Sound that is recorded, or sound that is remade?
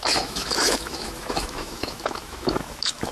remade